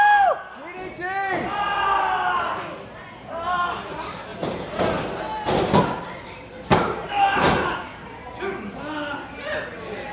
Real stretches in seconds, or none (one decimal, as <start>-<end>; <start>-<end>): 0.0-4.3; 4.8-6.7; 7.8-10.1